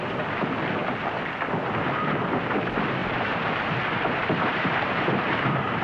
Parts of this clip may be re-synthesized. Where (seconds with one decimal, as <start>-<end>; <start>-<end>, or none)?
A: 0.0-0.8; 2.4-5.8